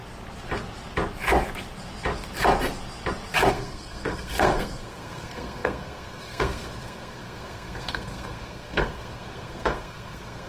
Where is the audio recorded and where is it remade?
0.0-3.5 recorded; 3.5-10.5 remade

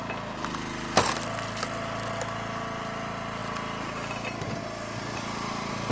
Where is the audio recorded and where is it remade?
0.0-5.9 recorded

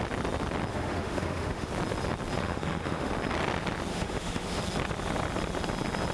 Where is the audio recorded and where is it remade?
0.0-0.7 recorded; 0.7-1.7 remade; 1.7-2.4 recorded; 2.4-3.1 remade; 3.1-3.9 recorded; 3.9-4.6 remade; 4.6-6.1 recorded

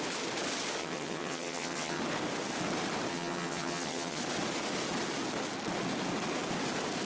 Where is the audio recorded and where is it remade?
0.0-0.8 recorded; 0.8-2.0 remade; 2.0-3.1 recorded; 3.1-4.2 remade; 4.2-7.0 recorded

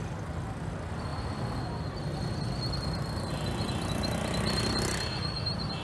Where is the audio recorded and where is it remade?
0.0-5.8 recorded